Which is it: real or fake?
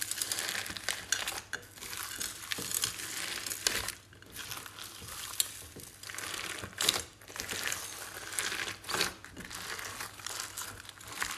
real